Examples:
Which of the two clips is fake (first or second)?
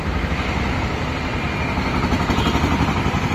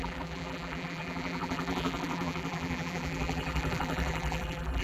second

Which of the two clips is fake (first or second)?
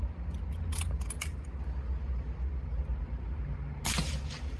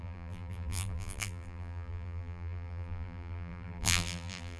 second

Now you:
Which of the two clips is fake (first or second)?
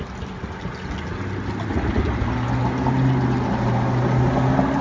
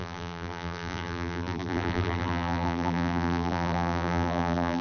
second